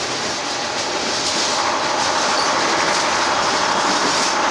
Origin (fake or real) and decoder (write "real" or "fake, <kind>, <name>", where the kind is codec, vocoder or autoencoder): fake, vocoder, BigVGAN v2